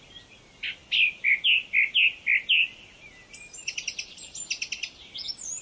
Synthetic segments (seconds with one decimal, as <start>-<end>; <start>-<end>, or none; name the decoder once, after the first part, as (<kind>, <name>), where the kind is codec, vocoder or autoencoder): none